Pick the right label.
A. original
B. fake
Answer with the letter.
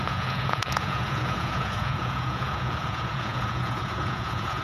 B